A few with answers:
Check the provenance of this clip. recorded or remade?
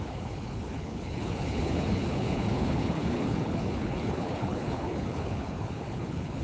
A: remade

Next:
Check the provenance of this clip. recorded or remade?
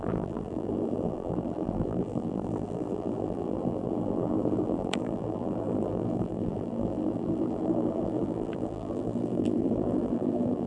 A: remade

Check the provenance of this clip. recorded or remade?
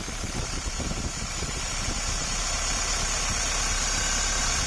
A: recorded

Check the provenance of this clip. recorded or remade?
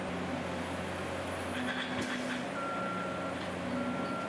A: recorded